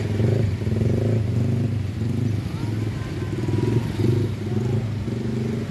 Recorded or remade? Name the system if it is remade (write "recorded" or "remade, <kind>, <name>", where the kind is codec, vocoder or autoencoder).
recorded